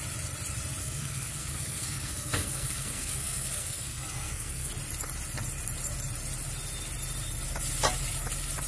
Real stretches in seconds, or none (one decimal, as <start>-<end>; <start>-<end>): 0.0-0.8; 4.7-8.7